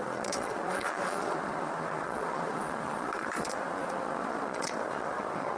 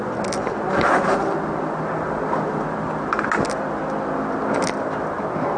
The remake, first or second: first